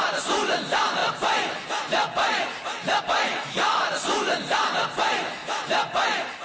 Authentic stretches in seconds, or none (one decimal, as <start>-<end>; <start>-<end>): 0.0-6.4